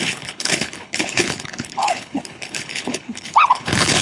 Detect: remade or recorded remade